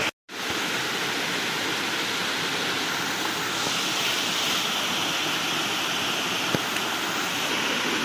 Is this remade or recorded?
recorded